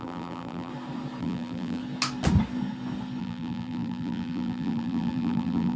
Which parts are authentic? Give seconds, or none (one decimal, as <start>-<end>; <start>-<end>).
0.7-1.2; 1.8-3.2